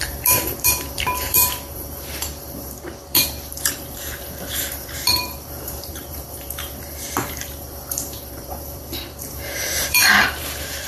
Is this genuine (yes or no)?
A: no